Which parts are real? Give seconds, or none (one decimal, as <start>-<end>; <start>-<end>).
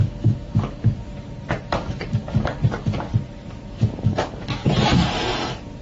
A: 1.1-1.7; 3.1-3.7; 4.6-5.8